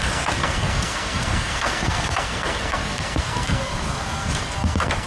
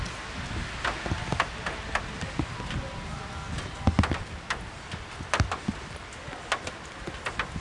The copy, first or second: first